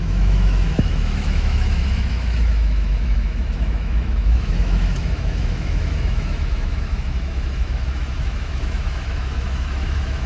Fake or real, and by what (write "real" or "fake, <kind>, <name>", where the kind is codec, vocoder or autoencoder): fake, autoencoder, DAC-VAE